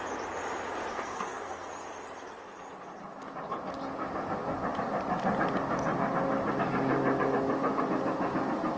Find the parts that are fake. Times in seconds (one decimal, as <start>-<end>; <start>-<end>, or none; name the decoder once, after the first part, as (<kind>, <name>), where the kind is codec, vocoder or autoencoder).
0.9-1.7 (codec, SNAC)